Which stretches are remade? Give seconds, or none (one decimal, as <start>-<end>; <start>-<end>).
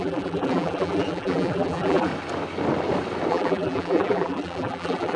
0.0-2.1; 3.3-5.2